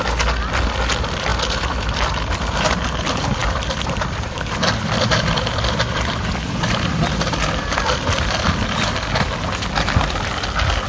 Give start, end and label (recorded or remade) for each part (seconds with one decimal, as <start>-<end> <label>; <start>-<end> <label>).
0.0-3.4 recorded; 3.4-8.5 remade; 8.5-10.9 recorded